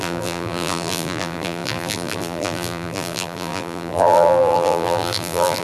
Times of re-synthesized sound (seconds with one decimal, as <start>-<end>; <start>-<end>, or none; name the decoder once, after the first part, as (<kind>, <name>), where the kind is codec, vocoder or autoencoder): 0.0-5.6 (vocoder, BigVGAN v2)